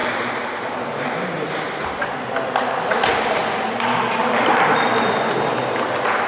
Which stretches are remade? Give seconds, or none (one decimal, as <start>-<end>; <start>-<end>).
0.0-2.3; 4.2-4.7